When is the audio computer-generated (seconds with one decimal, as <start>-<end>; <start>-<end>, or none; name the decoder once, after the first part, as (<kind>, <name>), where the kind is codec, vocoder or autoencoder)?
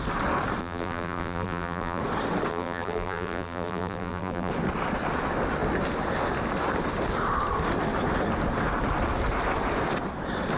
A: 0.6-2.0 (vocoder, BigVGAN v2); 2.5-4.5